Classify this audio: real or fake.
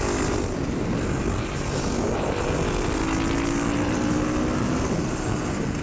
real